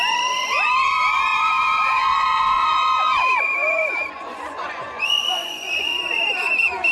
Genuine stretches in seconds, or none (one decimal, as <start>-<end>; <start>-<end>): 5.9-6.9

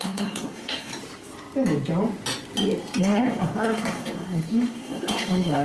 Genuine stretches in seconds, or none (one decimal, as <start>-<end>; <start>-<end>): 0.9-3.0

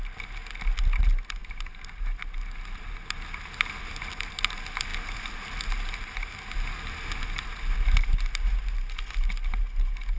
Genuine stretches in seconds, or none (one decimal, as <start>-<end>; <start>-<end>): 0.0-10.2

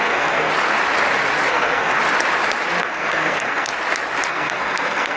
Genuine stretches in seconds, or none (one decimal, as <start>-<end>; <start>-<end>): 0.5-1.5; 2.0-2.8; 3.7-4.3

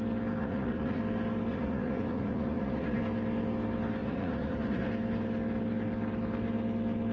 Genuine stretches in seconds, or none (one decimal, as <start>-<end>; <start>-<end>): 0.0-0.4; 1.0-1.5; 3.0-4.0; 4.9-7.1

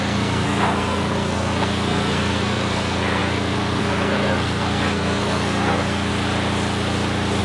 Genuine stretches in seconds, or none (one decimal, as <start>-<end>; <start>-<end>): 6.1-7.4